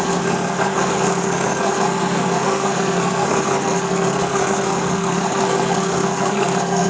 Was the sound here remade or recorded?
remade